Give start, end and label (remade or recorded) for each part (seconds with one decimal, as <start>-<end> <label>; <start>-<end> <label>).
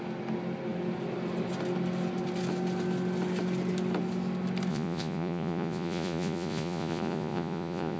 0.0-4.7 recorded; 4.7-8.0 remade